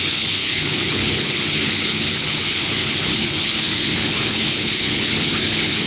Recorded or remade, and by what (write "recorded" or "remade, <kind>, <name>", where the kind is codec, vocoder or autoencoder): remade, codec, HILCodec